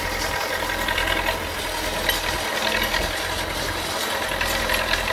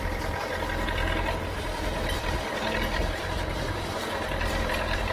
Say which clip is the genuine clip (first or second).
first